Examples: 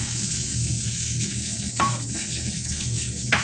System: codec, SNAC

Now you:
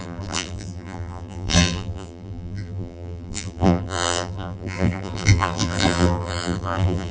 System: vocoder, BigVGAN v2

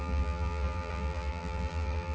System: vocoder, BigVGAN v2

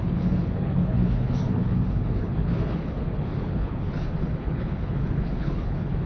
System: codec, HILCodec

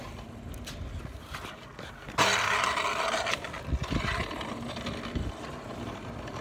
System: none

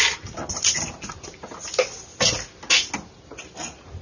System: none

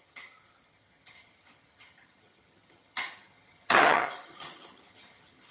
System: vocoder, HiFi-GAN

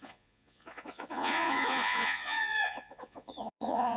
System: vocoder, Vocos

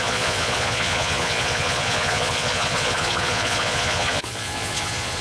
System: vocoder, Vocos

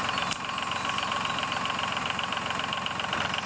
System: none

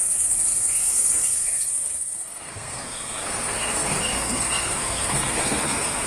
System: codec, SNAC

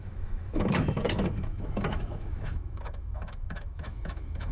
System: autoencoder, DAC-VAE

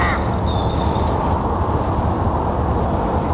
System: none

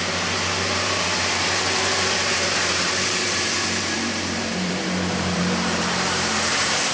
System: vocoder, BigVGAN v2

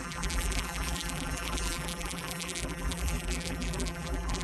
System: vocoder, BigVGAN v2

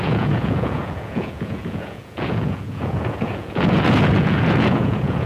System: vocoder, Vocos